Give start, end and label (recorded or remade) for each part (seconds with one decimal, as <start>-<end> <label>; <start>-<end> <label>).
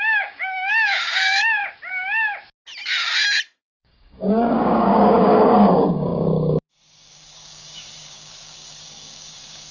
0.0-1.6 remade; 1.6-3.6 recorded; 3.6-9.7 remade